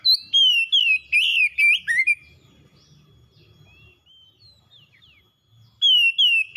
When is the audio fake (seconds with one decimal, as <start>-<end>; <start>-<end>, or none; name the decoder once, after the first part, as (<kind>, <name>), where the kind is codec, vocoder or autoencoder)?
1.3-5.2 (vocoder, BigVGAN v2)